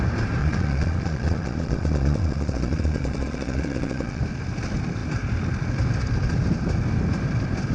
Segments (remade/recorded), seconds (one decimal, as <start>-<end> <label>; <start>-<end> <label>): 0.0-0.4 recorded; 0.4-4.2 remade; 4.2-7.7 recorded